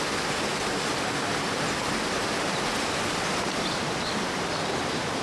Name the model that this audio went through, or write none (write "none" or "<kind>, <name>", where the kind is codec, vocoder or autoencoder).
vocoder, BigVGAN v2